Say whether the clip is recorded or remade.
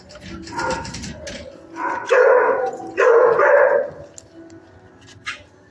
recorded